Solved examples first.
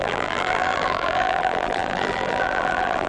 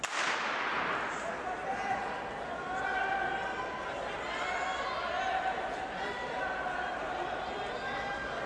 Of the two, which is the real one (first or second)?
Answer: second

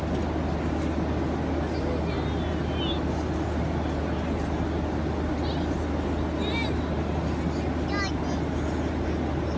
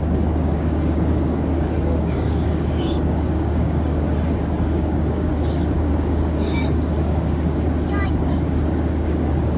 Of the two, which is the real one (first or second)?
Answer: first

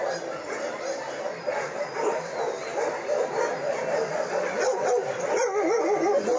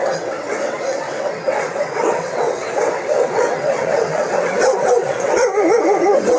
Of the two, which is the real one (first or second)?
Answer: first